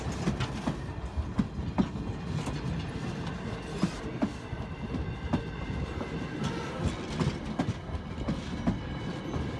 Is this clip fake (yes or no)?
no